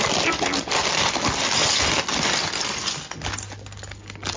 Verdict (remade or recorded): recorded